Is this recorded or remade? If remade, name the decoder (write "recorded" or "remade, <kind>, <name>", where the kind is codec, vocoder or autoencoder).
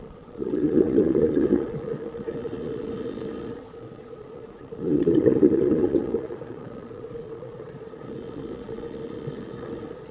remade, vocoder, Vocos